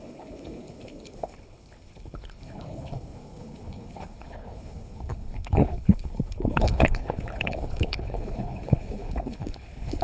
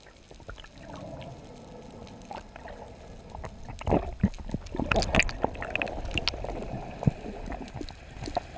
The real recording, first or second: second